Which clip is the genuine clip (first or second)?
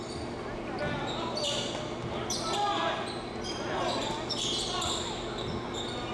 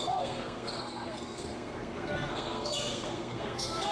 first